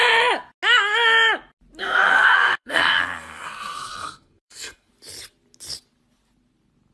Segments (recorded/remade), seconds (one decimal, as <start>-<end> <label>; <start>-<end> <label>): 0.0-1.8 recorded; 1.8-4.9 remade; 4.9-6.9 recorded